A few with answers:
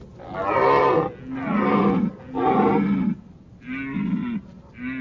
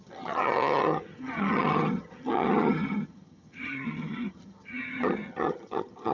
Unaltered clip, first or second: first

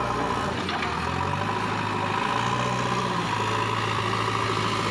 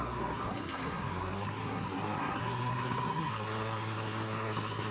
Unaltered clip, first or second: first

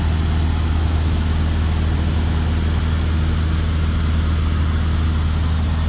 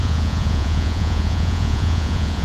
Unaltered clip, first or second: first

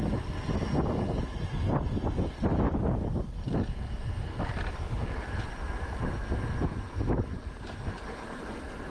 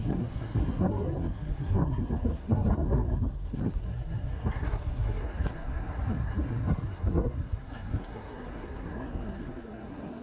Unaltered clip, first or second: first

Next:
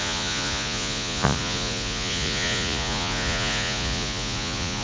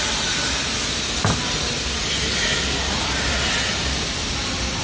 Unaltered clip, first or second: second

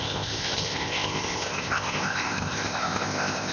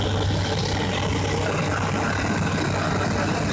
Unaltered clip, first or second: second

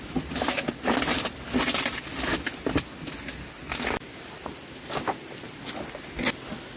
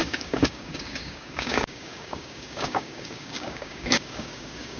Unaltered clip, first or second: first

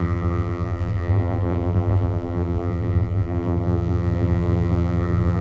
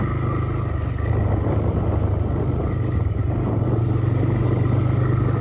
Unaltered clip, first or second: second